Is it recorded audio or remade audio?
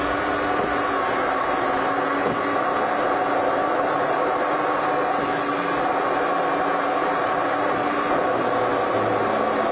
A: recorded